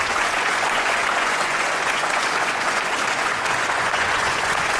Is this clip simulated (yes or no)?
yes